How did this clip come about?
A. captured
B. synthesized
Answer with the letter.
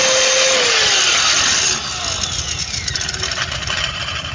A